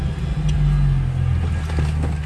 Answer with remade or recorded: recorded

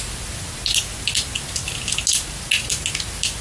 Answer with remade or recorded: recorded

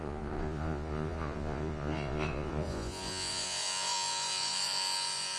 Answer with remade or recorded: remade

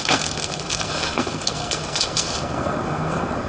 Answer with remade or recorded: remade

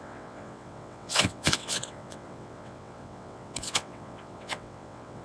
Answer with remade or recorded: remade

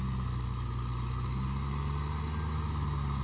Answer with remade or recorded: recorded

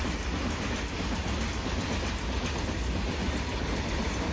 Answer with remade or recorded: recorded